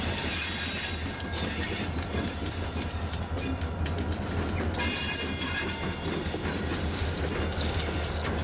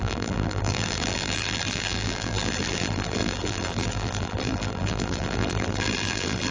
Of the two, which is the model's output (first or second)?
second